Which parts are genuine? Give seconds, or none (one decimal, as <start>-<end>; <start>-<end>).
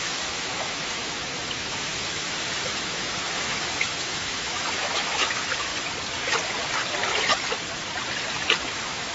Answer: 5.7-8.6